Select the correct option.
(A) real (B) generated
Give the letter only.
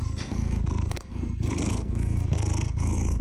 B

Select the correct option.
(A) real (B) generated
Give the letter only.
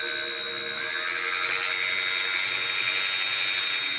A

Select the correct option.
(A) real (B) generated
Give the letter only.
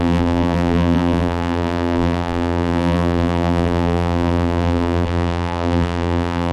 B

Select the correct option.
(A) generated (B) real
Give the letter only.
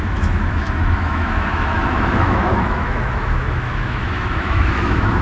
A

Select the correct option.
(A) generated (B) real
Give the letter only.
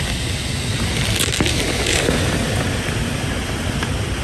B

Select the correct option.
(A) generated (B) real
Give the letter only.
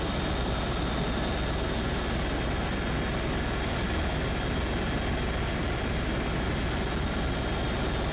B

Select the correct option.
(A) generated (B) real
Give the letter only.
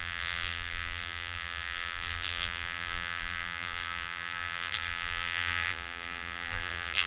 A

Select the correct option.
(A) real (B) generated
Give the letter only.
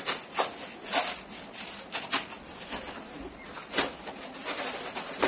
A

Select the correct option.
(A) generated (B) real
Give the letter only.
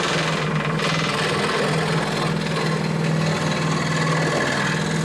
B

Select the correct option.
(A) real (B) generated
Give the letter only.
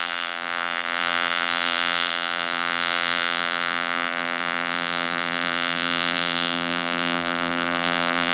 B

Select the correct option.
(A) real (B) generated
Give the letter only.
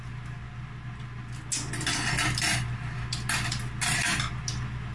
A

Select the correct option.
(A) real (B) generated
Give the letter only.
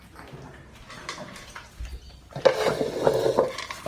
A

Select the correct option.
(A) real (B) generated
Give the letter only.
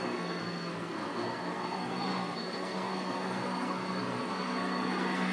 B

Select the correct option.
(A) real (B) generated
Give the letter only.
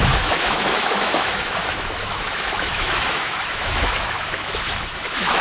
B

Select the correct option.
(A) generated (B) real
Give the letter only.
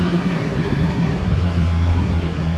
A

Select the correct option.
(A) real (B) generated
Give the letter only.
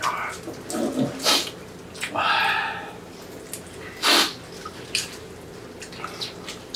A